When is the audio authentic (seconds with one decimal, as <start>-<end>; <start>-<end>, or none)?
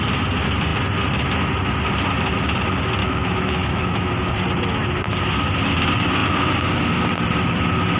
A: 0.0-3.0; 4.1-8.0